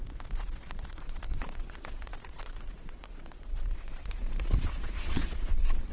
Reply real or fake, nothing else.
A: fake